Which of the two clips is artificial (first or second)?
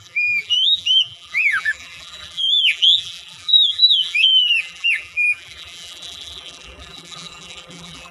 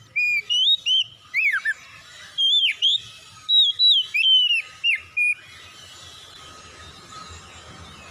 first